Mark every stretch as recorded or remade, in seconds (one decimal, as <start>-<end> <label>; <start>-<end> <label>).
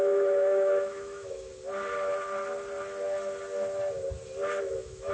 0.0-1.5 remade; 1.5-4.6 recorded; 4.6-5.1 remade